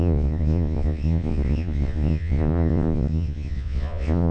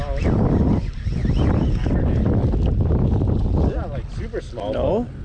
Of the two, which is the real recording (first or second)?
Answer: second